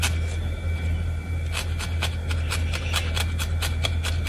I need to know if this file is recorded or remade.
recorded